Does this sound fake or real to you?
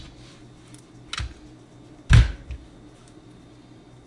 real